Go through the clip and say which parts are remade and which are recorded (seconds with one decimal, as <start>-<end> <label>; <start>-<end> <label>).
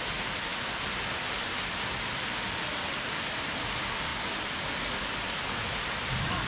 0.0-4.1 remade; 4.1-4.6 recorded; 4.6-6.5 remade